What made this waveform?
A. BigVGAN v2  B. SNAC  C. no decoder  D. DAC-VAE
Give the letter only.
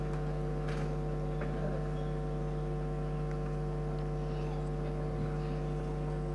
C